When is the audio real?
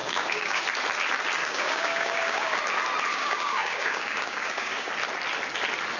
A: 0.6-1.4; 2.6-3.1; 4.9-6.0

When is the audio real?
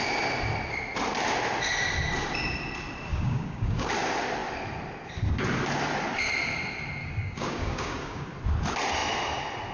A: 0.0-3.1; 3.9-7.0; 8.2-9.7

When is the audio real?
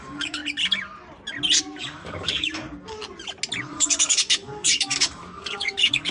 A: 0.4-1.8; 3.0-3.6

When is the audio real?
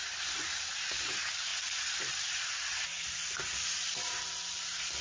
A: 0.0-5.0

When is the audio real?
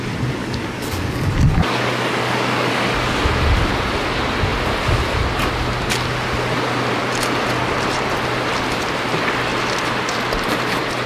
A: 0.0-0.4; 3.2-11.1